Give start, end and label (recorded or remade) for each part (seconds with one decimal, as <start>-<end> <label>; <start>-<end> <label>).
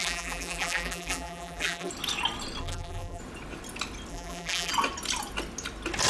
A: 0.0-1.9 remade; 1.9-2.6 recorded; 2.6-3.2 remade; 3.2-4.1 recorded; 4.1-4.7 remade; 4.7-6.1 recorded